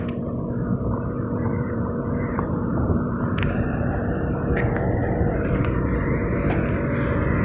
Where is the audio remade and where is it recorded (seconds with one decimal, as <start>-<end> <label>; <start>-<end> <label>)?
0.0-0.7 recorded; 0.7-4.2 remade; 4.2-5.0 recorded; 5.0-6.3 remade; 6.3-7.4 recorded